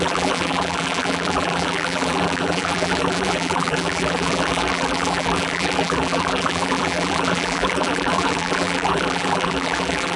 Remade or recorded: remade